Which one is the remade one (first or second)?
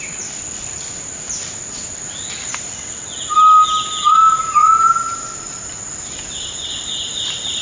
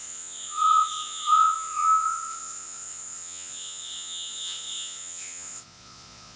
second